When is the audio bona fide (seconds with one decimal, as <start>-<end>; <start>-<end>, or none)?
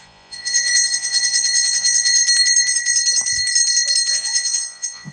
2.2-4.1